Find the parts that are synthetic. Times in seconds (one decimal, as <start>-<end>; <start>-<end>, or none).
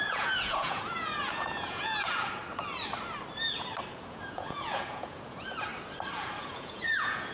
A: 0.0-2.4; 4.1-5.7; 6.2-7.3